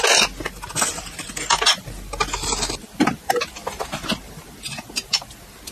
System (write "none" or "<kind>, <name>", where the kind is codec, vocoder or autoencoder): none